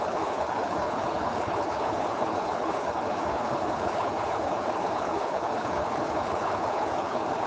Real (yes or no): no